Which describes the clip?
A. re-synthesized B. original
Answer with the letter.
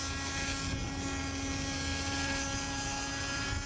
B